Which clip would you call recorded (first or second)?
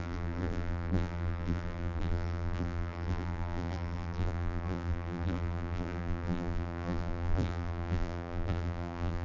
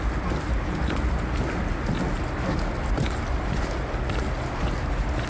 second